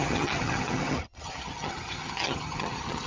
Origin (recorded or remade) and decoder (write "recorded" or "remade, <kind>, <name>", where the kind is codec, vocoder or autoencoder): remade, vocoder, HiFi-GAN